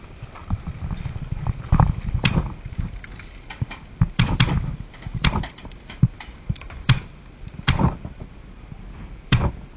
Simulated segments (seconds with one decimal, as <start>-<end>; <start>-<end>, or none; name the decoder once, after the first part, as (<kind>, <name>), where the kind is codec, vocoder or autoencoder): 0.0-0.4 (vocoder, BigVGAN v2); 1.6-9.8